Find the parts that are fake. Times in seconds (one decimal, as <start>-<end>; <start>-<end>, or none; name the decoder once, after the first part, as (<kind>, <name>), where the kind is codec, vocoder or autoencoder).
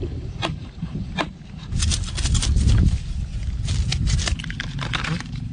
0.0-1.9 (vocoder, BigVGAN v2); 4.4-5.5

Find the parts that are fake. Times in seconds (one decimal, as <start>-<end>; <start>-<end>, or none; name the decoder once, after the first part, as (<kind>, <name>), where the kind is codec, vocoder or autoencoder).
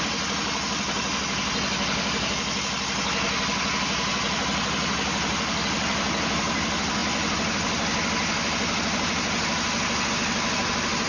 none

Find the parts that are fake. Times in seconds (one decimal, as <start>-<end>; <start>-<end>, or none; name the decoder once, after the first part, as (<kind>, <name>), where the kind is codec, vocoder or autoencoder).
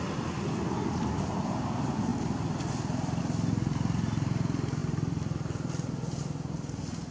none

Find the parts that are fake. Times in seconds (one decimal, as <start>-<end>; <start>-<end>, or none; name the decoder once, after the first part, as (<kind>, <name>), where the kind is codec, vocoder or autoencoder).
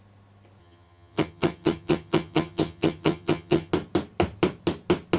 0.6-3.7 (vocoder, HiFi-GAN)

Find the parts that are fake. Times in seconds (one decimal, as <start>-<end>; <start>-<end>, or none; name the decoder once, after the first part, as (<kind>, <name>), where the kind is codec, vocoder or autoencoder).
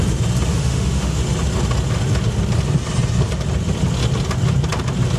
0.5-1.2 (autoencoder, DAC-VAE)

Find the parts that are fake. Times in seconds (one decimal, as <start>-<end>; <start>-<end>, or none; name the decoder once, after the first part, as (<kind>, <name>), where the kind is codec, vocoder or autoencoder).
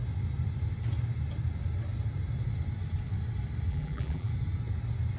3.7-4.3 (vocoder, BigVGAN v2)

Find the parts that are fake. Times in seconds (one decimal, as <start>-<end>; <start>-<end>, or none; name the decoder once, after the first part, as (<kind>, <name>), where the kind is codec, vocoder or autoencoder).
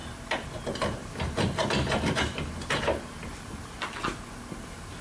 1.0-4.0 (vocoder, BigVGAN v2)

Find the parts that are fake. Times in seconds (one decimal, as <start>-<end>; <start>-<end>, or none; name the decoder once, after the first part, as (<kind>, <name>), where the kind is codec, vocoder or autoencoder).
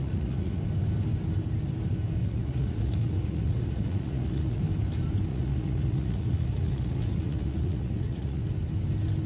0.0-0.6 (vocoder, Vocos); 2.2-4.6; 5.3-8.4